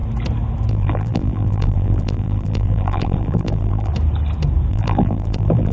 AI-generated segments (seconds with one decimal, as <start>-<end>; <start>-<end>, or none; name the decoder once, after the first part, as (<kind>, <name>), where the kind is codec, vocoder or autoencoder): 0.7-3.9 (vocoder, BigVGAN v2); 4.7-5.7

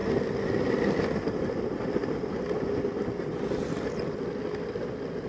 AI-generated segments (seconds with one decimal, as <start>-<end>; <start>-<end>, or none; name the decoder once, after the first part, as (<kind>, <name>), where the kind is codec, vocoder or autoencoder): none

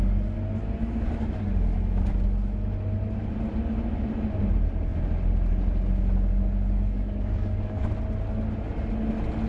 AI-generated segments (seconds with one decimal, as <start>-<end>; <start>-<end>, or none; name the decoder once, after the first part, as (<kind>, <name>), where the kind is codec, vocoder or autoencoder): 6.3-7.9 (codec, DAC)

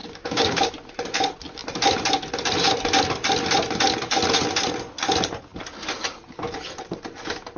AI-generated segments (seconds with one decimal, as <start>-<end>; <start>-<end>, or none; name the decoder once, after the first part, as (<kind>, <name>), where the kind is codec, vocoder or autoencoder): 0.0-0.7 (codec, DAC)

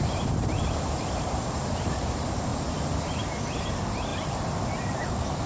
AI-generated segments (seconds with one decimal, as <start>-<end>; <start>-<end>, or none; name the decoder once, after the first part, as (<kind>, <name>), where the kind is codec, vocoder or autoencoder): 0.0-2.5 (vocoder, BigVGAN v2); 3.5-4.1

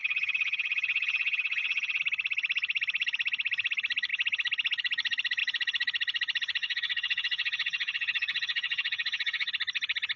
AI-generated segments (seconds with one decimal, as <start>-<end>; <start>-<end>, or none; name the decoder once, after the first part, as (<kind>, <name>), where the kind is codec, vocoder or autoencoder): 0.0-2.0 (vocoder, HiFi-GAN); 6.6-9.5

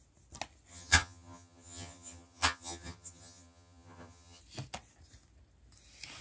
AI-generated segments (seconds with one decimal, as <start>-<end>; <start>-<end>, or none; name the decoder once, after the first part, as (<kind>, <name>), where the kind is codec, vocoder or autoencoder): 0.7-4.4 (vocoder, HiFi-GAN)

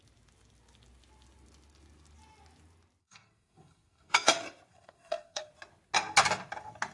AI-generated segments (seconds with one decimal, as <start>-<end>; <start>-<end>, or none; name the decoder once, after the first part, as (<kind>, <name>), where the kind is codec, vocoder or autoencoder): 3.0-4.3 (codec, SNAC); 4.7-5.5